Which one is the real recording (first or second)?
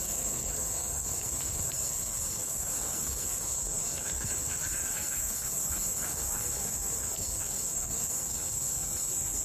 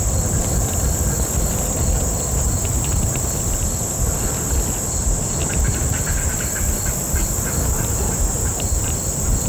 second